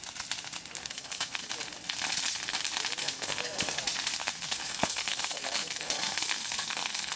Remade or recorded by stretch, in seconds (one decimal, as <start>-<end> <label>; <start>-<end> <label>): 0.0-0.8 recorded; 0.8-1.5 remade; 1.5-3.0 recorded; 3.0-3.8 remade; 3.8-4.2 recorded; 4.2-7.2 remade